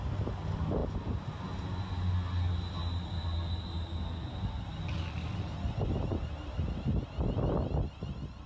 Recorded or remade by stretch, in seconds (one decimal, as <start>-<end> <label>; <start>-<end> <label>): 0.0-8.5 recorded